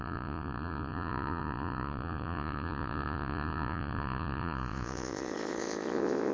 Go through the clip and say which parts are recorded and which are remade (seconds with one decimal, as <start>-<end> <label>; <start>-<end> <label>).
0.0-6.3 remade

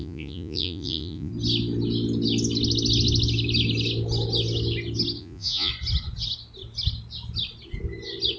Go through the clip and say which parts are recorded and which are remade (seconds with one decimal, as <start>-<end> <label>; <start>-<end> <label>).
0.0-1.3 remade; 1.3-5.2 recorded; 5.2-5.7 remade; 5.7-8.4 recorded

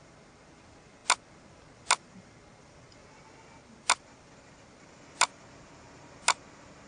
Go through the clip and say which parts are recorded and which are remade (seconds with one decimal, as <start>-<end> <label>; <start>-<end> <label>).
0.0-6.9 recorded